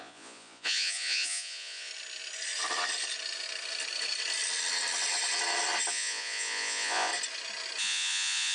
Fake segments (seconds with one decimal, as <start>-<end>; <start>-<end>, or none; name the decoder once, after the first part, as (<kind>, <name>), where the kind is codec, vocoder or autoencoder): 0.0-1.9 (vocoder, Vocos); 5.9-7.1; 7.8-8.5